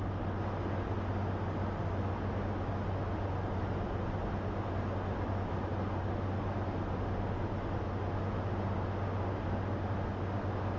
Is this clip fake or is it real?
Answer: real